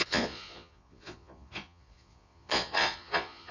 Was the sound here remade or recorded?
remade